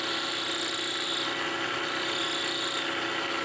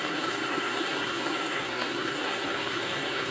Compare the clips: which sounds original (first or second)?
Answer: first